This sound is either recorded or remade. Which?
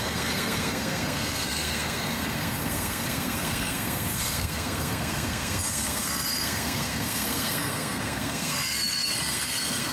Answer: remade